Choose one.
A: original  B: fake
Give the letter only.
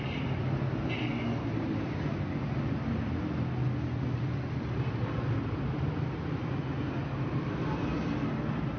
A